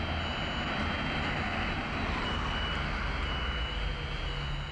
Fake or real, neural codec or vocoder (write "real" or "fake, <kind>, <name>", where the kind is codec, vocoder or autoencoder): real